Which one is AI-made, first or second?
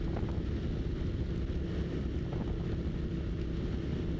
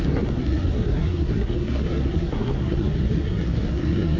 second